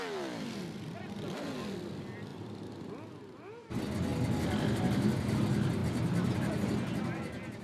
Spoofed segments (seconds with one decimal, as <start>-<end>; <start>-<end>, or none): none